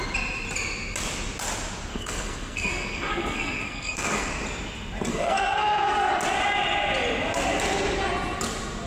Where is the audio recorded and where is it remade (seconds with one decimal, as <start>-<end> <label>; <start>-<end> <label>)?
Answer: 0.0-1.9 recorded; 1.9-4.3 remade; 4.3-5.1 recorded; 5.1-6.1 remade; 6.1-8.9 recorded